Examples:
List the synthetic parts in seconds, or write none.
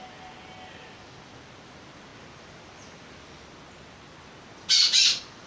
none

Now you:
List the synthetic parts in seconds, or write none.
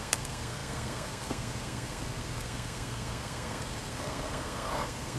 0.0-5.2 (codec, SNAC)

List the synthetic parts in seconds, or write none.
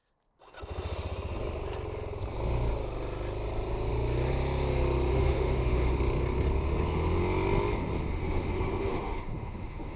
5.1-6.0 (autoencoder, DAC-VAE); 8.1-10.0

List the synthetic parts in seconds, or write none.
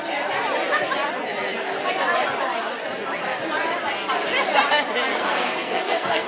5.1-6.3 (codec, SNAC)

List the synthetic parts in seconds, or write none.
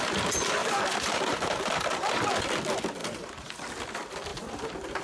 0.6-2.4 (vocoder, BigVGAN v2); 3.0-3.5; 4.3-5.0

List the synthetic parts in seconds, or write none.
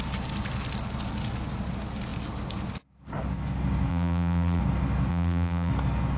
3.9-4.6 (vocoder, BigVGAN v2); 5.1-5.7